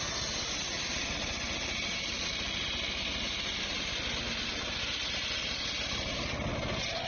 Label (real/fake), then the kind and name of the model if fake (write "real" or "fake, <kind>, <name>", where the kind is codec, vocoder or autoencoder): real